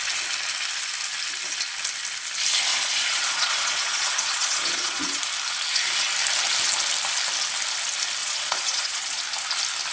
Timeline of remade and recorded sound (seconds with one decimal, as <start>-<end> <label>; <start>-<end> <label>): 0.0-2.7 recorded; 2.7-5.2 remade; 5.2-8.2 recorded; 8.2-9.2 remade; 9.2-9.9 recorded

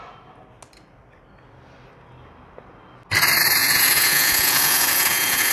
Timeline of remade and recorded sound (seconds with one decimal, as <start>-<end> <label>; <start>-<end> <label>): 0.0-3.6 recorded; 3.6-5.5 remade

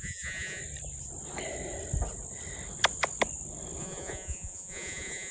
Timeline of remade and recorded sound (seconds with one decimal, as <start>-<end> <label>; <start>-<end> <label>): 0.0-0.6 remade; 0.6-3.8 recorded; 3.8-5.3 remade

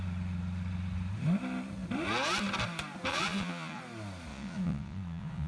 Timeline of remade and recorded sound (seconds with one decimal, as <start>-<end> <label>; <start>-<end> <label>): 0.0-3.1 recorded; 3.1-3.8 remade; 3.8-4.3 recorded; 4.3-5.5 remade

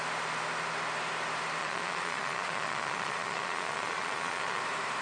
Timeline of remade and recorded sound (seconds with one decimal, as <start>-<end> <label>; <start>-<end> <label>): 0.0-1.6 recorded; 1.6-4.6 remade; 4.6-5.0 recorded

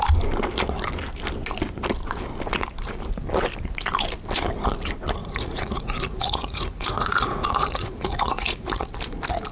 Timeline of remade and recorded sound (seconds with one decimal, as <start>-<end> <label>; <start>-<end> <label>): 0.0-5.2 recorded; 5.2-8.9 remade; 8.9-9.5 recorded

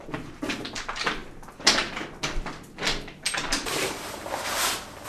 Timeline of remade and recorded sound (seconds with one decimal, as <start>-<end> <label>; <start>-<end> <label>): 0.0-5.1 recorded

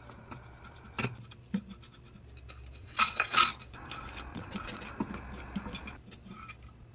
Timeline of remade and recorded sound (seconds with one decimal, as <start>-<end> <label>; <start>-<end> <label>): 0.0-2.8 recorded; 2.8-3.5 remade; 3.5-4.3 recorded; 4.3-4.8 remade; 4.8-6.9 recorded